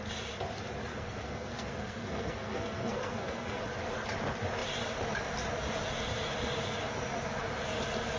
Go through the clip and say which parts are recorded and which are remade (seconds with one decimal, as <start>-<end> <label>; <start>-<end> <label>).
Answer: 0.0-0.9 recorded; 0.9-3.6 remade; 3.6-8.2 recorded